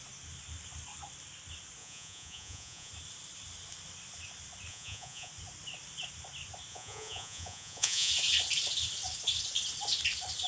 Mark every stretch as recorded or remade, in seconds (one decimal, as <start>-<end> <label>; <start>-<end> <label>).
0.0-1.8 recorded; 1.8-2.9 remade; 2.9-4.7 recorded; 4.7-5.3 remade; 5.3-6.7 recorded; 6.7-8.1 remade; 8.1-10.5 recorded

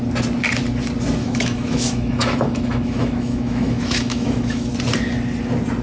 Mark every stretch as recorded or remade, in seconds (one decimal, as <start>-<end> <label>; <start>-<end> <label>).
0.0-1.2 recorded; 1.2-4.7 remade; 4.7-5.8 recorded

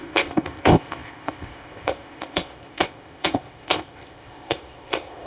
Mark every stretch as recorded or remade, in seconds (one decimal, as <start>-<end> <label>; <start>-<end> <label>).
0.0-5.3 remade

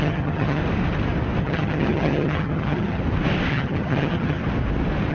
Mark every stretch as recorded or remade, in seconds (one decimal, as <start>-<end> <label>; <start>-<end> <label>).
0.0-0.6 remade; 0.6-1.4 recorded; 1.4-3.0 remade; 3.0-3.5 recorded; 3.5-4.4 remade; 4.4-5.1 recorded

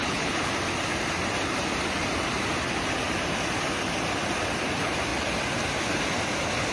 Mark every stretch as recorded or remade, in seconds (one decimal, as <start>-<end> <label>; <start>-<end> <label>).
0.0-0.5 remade; 0.5-6.7 recorded

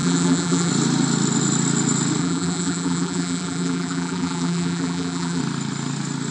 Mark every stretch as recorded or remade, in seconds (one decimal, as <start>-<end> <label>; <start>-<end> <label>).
0.0-0.7 remade; 0.7-2.2 recorded; 2.2-5.4 remade; 5.4-6.3 recorded